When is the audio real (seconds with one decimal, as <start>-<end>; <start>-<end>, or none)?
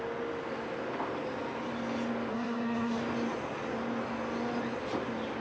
0.0-2.3; 3.0-5.4